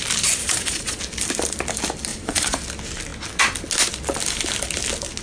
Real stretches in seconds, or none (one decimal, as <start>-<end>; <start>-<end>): 0.0-0.4; 1.0-2.1; 2.6-5.2